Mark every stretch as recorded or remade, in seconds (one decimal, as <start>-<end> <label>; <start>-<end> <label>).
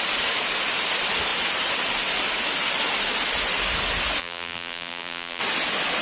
0.0-4.2 recorded; 4.2-5.4 remade; 5.4-6.0 recorded